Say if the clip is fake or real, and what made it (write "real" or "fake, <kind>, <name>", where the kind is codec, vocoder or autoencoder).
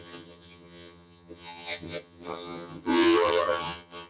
fake, vocoder, HiFi-GAN